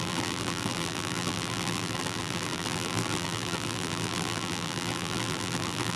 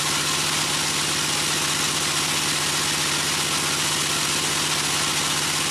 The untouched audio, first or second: second